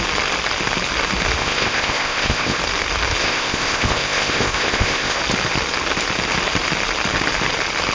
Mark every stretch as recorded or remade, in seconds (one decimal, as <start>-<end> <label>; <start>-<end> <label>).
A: 0.0-1.4 recorded; 1.4-2.6 remade; 2.6-3.2 recorded; 3.2-5.2 remade; 5.2-7.9 recorded